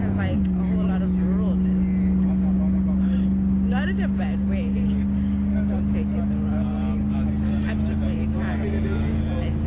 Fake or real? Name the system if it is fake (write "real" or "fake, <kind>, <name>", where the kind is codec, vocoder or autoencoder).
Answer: real